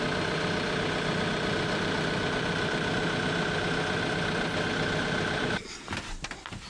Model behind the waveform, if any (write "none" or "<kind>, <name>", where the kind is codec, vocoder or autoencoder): none